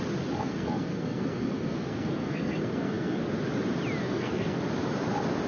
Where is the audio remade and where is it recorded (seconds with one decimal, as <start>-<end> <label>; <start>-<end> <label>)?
0.0-0.4 recorded; 0.4-3.2 remade; 3.2-4.0 recorded; 4.0-4.6 remade; 4.6-5.5 recorded